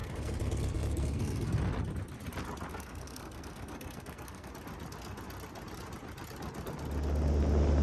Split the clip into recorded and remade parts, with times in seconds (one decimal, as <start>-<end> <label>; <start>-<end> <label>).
0.0-1.6 remade; 1.6-2.7 recorded; 2.7-4.5 remade; 4.5-7.8 recorded